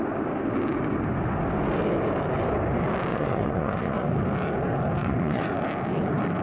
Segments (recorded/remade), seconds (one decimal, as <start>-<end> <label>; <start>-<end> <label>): 0.0-3.1 recorded; 3.1-4.2 remade; 4.2-5.0 recorded; 5.0-5.6 remade; 5.6-6.4 recorded